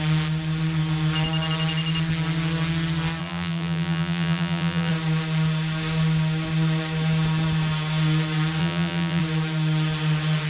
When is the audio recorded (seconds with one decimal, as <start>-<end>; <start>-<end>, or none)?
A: 0.0-3.2; 4.9-8.6; 9.2-10.5

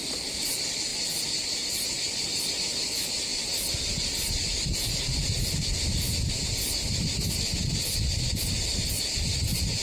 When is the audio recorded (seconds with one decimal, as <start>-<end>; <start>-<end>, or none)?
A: 3.3-8.4

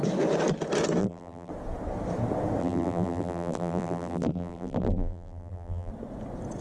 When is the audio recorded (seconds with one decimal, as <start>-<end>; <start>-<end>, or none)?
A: 0.0-1.0; 1.5-2.6; 5.9-6.6

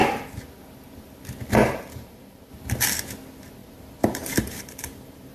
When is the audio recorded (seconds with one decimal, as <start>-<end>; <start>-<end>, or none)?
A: 0.0-1.6; 2.5-3.6

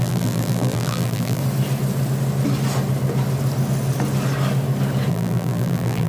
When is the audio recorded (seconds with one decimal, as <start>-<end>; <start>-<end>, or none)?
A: 1.4-5.1

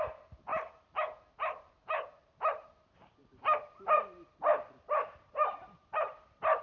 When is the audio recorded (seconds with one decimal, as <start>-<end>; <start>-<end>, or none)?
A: 0.0-3.2; 5.9-6.6